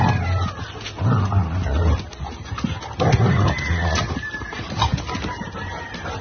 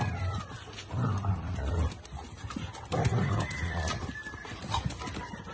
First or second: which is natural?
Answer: first